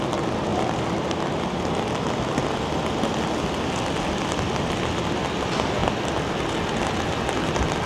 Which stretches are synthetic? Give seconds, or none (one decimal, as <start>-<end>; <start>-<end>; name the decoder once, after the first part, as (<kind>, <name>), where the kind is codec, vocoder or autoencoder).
none